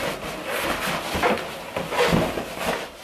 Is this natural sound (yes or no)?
no